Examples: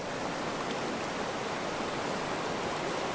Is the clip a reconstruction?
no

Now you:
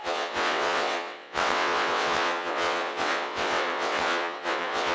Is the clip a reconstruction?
yes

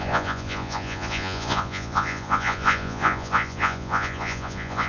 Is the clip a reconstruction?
yes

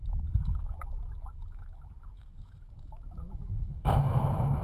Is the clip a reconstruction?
yes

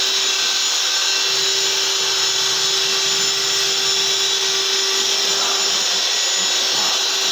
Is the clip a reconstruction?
no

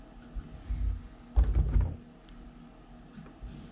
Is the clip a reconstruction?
no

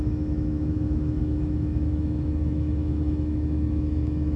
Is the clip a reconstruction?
yes